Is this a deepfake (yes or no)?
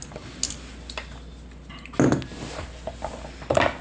no